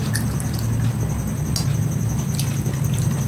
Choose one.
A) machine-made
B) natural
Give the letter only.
B